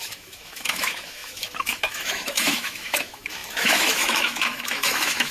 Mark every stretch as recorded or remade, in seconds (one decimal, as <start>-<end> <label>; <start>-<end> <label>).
0.0-5.3 remade